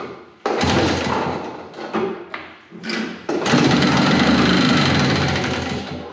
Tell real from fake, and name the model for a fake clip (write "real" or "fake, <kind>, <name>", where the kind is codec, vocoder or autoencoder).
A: real